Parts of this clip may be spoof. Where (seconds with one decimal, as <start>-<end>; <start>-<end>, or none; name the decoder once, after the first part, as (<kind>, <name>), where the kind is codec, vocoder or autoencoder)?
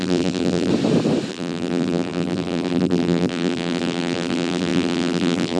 0.0-0.7 (vocoder, BigVGAN v2); 1.3-5.6